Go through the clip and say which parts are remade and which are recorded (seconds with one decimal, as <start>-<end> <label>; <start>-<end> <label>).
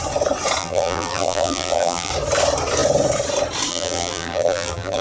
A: 0.0-0.6 recorded; 0.6-2.1 remade; 2.1-3.7 recorded; 3.7-5.0 remade